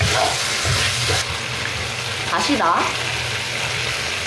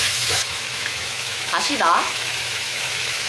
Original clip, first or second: first